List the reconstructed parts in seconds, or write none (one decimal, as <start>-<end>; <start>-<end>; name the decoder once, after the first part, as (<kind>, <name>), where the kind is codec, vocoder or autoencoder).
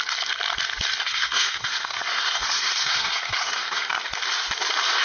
1.0-4.0 (codec, SNAC)